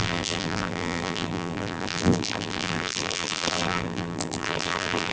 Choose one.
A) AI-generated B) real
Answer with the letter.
A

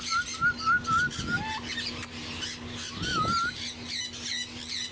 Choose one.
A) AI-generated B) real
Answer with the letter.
B